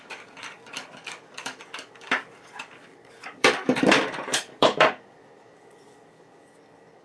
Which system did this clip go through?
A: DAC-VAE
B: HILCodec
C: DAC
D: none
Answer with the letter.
C